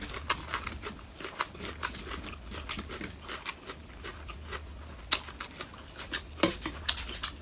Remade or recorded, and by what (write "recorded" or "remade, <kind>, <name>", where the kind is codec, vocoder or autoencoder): recorded